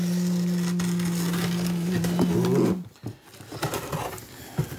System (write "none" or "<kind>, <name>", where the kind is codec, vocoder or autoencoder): none